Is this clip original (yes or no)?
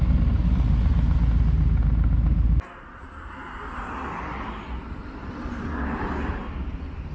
yes